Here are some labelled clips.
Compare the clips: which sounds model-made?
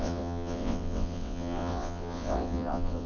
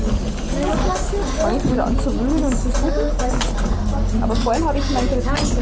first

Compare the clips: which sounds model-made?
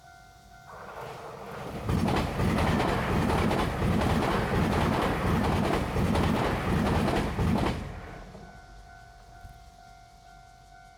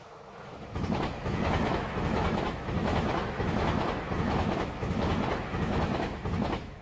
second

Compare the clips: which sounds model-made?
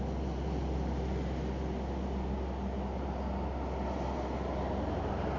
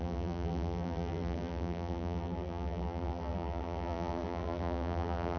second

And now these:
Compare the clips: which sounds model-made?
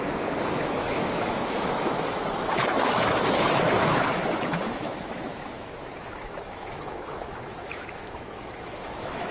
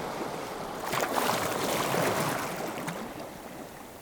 first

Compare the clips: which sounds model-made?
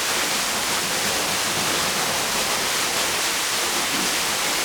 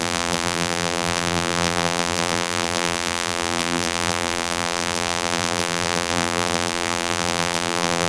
second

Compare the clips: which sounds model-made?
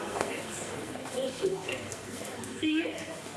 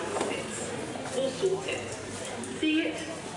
first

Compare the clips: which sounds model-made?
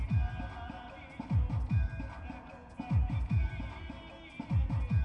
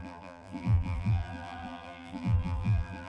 second